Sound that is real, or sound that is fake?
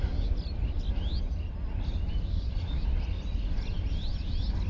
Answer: real